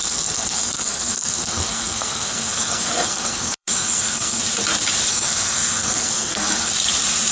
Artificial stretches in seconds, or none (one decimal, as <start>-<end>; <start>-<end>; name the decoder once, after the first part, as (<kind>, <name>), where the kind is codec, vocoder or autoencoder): 0.0-4.4 (codec, SNAC); 5.1-6.7